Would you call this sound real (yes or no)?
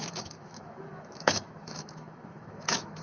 no